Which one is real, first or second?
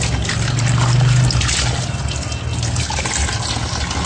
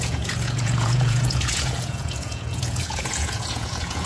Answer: first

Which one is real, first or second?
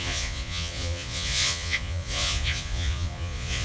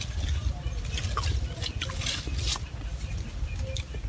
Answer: second